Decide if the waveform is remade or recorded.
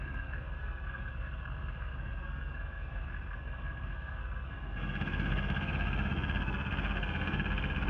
remade